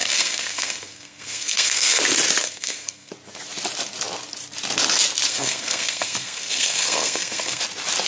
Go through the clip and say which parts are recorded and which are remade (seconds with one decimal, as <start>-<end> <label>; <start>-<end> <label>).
0.0-2.0 remade; 2.0-2.4 recorded; 2.4-3.1 remade; 3.1-5.3 recorded; 5.3-7.6 remade; 7.6-8.1 recorded